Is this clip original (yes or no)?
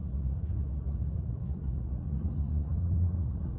no